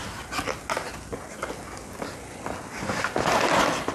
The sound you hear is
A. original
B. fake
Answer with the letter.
A